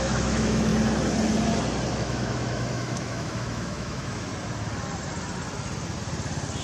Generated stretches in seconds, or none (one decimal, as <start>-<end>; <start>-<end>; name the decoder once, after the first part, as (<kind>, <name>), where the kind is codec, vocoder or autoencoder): 0.0-0.7 (autoencoder, DAC-VAE); 1.9-4.3